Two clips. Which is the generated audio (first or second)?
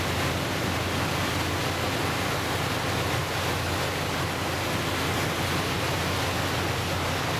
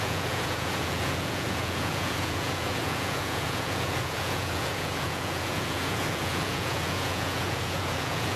second